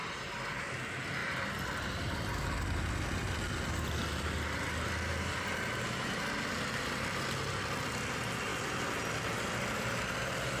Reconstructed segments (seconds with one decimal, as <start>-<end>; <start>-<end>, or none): none